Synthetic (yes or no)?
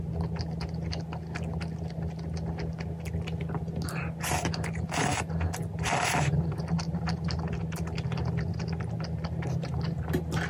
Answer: no